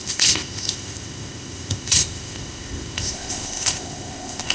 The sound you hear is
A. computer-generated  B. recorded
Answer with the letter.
A